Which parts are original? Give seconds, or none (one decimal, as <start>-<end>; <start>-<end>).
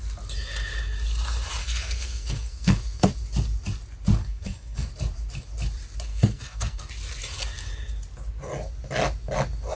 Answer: 0.0-1.6; 3.1-4.2; 4.9-6.1; 6.9-9.7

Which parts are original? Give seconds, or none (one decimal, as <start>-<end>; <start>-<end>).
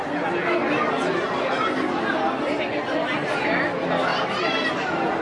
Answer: 0.0-4.1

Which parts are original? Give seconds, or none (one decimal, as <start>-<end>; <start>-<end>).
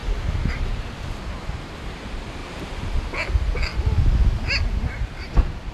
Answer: 0.9-2.4; 3.1-5.7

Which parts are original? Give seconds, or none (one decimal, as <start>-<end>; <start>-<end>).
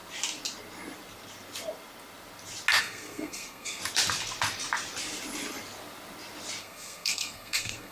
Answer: 0.0-2.8; 3.8-6.6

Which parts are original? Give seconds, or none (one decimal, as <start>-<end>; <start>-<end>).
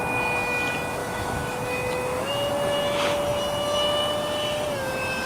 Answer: 0.0-1.0; 2.5-5.3